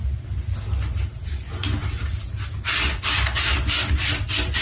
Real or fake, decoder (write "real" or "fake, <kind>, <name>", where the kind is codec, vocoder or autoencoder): real